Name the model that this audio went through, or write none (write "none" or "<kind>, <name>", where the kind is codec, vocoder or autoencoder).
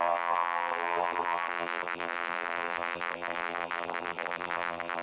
vocoder, BigVGAN v2